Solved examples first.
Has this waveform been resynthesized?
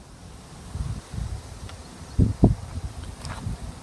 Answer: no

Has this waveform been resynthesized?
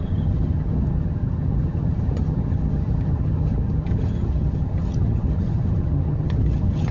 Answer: yes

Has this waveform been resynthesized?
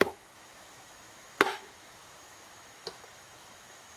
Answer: yes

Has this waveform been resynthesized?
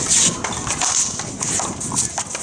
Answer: no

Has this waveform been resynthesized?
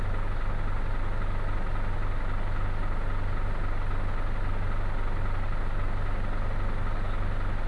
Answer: no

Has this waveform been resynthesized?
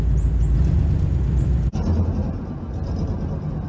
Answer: no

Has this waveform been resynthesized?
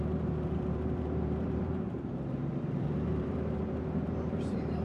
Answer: yes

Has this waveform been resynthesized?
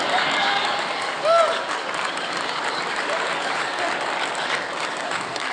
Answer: yes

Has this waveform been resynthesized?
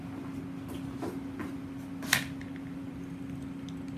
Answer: no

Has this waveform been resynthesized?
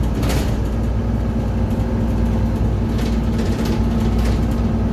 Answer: no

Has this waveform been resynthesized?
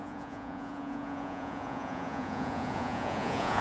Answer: yes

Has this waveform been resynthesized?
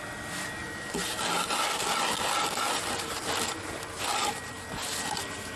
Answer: no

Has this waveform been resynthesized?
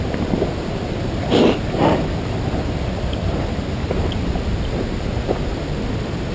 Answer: yes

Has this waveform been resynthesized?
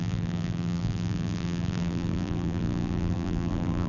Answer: yes